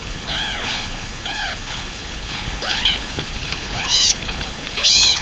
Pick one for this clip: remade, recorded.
remade